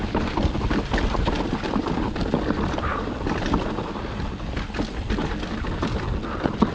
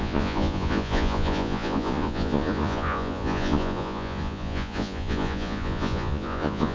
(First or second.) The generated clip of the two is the second